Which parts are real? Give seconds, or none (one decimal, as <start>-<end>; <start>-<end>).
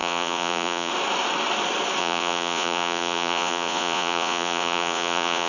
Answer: 0.9-2.0